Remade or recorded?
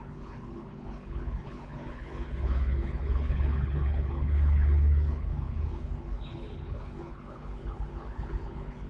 remade